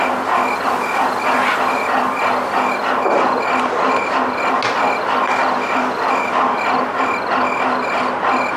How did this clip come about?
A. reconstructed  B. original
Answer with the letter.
B